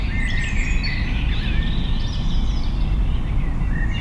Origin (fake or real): real